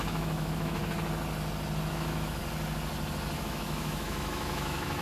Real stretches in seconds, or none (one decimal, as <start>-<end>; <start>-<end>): 0.8-1.9; 2.4-3.4